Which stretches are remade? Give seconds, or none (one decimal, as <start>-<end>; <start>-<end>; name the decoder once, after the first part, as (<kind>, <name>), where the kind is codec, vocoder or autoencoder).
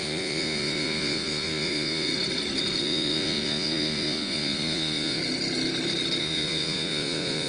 0.0-2.1 (vocoder, Vocos); 2.8-5.2; 6.2-7.5